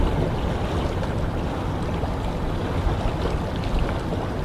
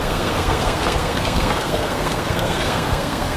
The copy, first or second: second